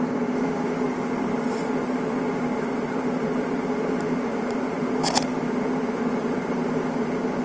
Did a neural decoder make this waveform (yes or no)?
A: yes